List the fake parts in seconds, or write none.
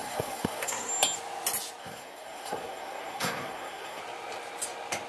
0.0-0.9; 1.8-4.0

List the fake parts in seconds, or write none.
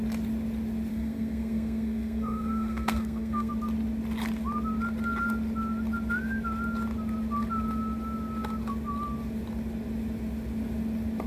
0.9-3.5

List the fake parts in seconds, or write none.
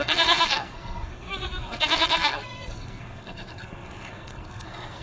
0.0-5.0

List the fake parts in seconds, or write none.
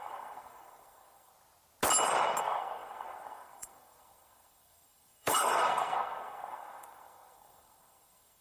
0.0-1.3; 2.4-8.4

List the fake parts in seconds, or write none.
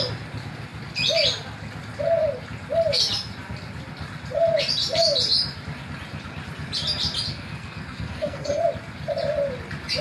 7.3-8.6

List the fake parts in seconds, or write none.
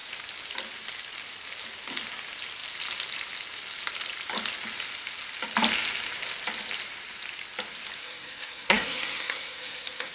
8.0-10.1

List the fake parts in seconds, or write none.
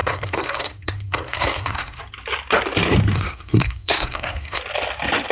0.0-2.0; 3.1-4.6